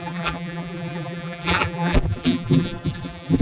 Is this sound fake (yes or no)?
yes